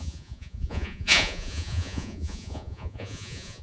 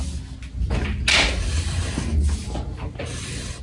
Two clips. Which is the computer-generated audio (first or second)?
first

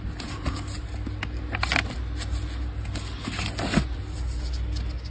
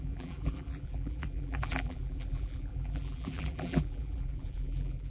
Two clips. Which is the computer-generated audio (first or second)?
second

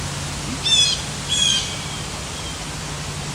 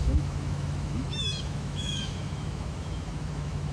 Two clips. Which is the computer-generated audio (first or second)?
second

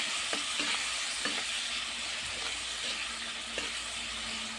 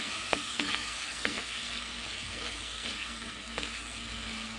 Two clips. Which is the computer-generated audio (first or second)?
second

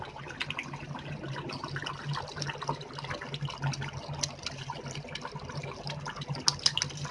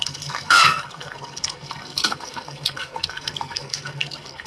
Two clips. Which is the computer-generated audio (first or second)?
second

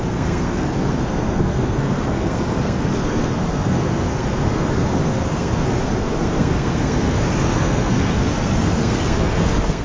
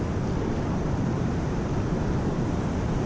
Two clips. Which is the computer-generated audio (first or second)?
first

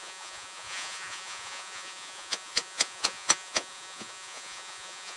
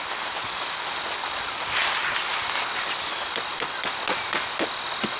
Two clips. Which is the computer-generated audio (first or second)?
first